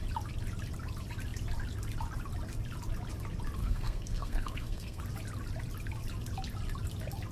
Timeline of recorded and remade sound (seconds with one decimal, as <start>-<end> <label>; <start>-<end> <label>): 0.0-3.6 recorded; 3.6-5.0 remade; 5.0-7.3 recorded